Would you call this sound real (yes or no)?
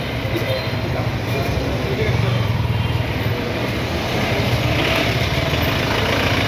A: yes